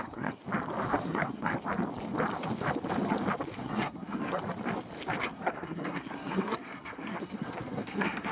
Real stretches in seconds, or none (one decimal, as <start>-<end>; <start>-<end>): 0.4-1.0; 1.5-3.6; 4.4-5.2